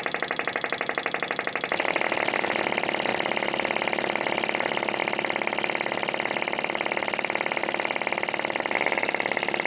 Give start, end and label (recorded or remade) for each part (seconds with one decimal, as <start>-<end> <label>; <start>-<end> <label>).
0.0-9.7 recorded